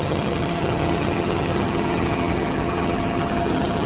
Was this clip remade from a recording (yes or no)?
yes